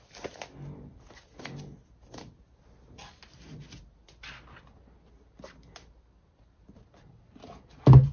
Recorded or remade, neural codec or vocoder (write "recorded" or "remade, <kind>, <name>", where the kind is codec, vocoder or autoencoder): recorded